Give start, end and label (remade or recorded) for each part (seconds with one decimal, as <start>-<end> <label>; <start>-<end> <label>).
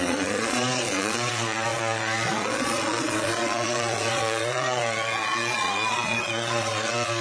0.0-7.2 remade